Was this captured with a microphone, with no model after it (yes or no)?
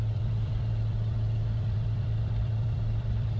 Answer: no